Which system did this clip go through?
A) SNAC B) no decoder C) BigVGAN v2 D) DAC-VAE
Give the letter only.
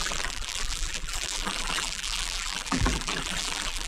C